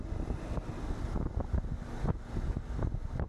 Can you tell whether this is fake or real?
real